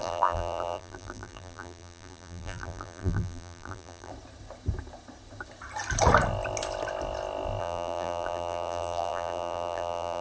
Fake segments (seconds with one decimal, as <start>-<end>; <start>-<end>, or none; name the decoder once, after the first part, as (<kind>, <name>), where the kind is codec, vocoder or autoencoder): 0.0-4.1 (vocoder, BigVGAN v2); 7.6-10.2